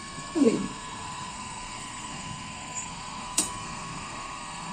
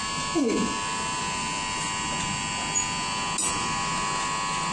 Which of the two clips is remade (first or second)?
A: first